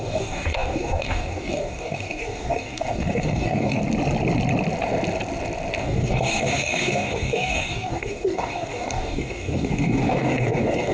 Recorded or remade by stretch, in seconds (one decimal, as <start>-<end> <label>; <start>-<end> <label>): 0.0-3.8 remade; 3.8-5.8 recorded; 5.8-10.9 remade